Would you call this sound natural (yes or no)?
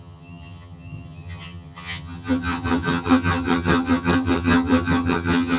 no